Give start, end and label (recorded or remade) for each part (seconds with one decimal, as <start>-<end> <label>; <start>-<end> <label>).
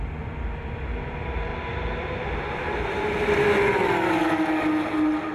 0.0-5.3 recorded